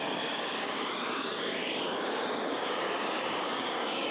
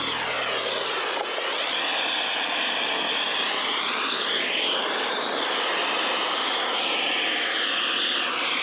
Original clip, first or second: second